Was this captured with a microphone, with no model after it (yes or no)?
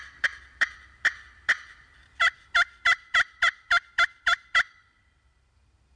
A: no